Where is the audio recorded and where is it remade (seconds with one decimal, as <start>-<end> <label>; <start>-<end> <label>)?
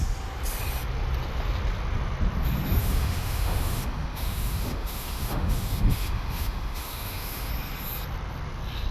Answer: 0.0-2.8 recorded; 2.8-7.5 remade; 7.5-8.9 recorded